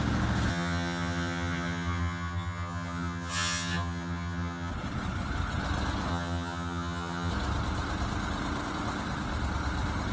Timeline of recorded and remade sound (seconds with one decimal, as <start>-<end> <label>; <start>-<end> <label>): 0.0-0.5 recorded; 0.5-4.7 remade; 4.7-6.1 recorded; 6.1-7.3 remade; 7.3-10.1 recorded